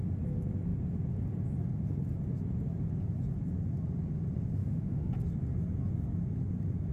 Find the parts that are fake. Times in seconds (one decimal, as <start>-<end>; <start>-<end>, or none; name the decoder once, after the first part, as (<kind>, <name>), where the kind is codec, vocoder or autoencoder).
4.6-5.1 (autoencoder, DAC-VAE)